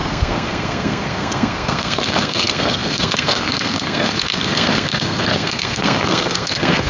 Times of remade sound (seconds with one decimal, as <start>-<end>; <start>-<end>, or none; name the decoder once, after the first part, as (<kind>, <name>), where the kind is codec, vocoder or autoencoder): 0.0-6.9 (codec, SNAC)